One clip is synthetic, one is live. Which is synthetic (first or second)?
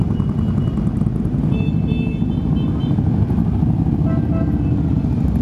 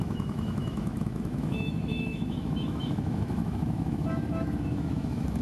second